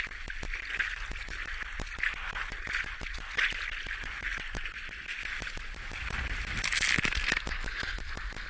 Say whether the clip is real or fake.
real